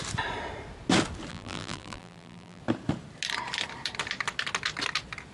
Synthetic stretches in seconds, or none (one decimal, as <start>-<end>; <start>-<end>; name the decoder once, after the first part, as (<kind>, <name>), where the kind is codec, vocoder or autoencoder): 1.3-2.6 (vocoder, BigVGAN v2)